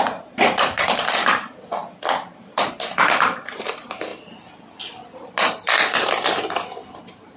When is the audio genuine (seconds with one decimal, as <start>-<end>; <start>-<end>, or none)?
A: 1.8-2.4; 4.1-7.0